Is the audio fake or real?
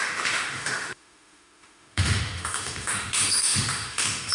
fake